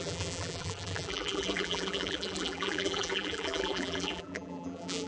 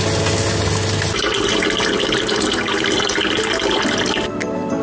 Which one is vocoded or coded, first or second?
first